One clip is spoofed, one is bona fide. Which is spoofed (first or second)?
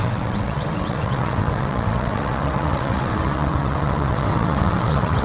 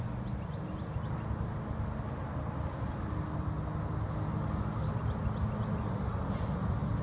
first